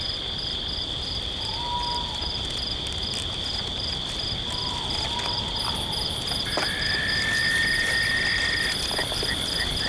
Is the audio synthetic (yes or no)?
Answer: no